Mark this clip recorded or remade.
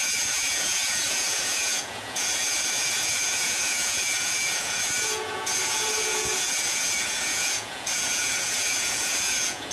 remade